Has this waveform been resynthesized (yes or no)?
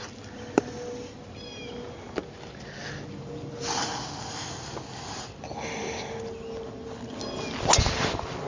no